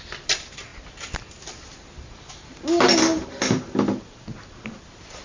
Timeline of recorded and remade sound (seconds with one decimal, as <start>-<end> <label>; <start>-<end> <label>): 0.0-5.2 recorded